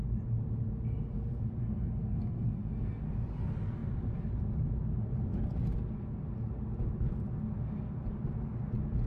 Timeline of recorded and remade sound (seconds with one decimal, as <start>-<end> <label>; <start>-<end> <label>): 0.0-1.6 recorded; 1.6-3.0 remade; 3.0-9.1 recorded